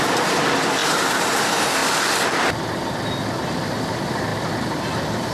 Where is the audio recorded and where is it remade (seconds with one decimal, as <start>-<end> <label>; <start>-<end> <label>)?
0.0-1.8 remade; 1.8-3.5 recorded; 3.5-5.3 remade